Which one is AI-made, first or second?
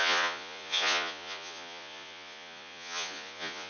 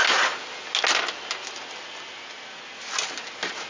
first